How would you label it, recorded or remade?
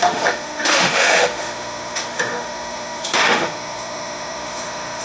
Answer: remade